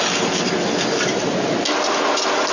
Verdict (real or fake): real